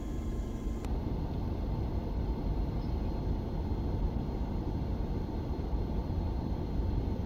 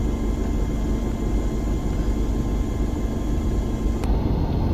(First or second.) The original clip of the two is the second